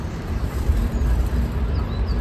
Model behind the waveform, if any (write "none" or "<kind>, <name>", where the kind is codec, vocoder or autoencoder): vocoder, BigVGAN v2